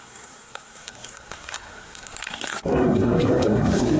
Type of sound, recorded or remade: remade